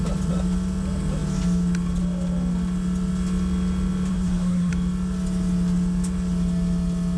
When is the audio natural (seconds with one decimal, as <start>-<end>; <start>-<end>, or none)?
0.0-4.1; 4.7-7.2